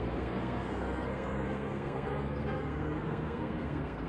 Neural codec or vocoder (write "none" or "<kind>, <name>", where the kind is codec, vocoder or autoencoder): codec, SNAC